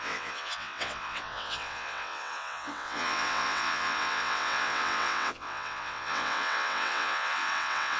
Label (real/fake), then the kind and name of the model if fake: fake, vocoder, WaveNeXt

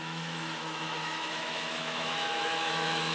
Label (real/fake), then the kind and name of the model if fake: fake, autoencoder, DAC-VAE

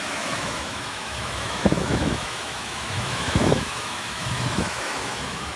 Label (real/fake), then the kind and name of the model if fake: fake, autoencoder, DAC-VAE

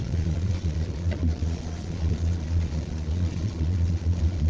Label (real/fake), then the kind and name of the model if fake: fake, vocoder, Vocos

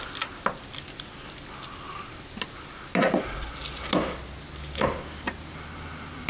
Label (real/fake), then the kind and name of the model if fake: real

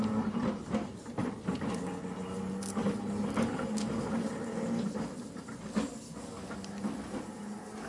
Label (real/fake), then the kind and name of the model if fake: real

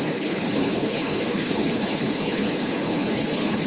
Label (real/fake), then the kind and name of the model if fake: fake, codec, HILCodec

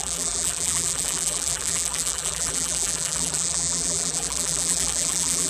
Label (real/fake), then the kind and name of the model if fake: fake, vocoder, BigVGAN v2